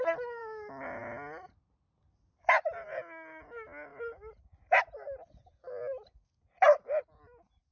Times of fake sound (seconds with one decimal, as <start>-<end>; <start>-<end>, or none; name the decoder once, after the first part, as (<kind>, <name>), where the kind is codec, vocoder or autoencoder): none